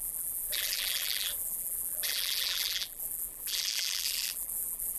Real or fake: fake